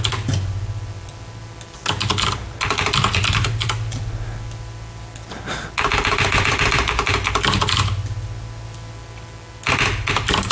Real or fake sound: real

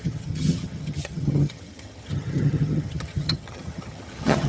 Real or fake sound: fake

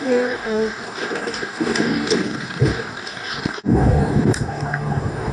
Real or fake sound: fake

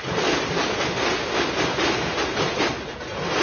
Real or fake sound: real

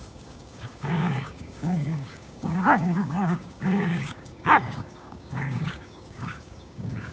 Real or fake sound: fake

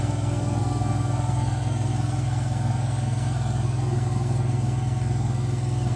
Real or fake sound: fake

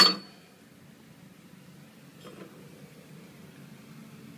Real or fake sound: real